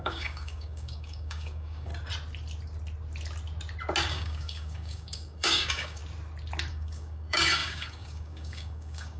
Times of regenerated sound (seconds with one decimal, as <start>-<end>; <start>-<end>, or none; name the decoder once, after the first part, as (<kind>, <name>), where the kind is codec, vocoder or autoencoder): 0.0-1.9 (codec, DAC); 4.1-6.0; 6.7-9.2